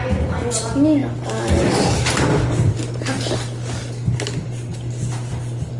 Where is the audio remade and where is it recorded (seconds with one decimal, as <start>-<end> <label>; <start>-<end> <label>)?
0.0-5.8 recorded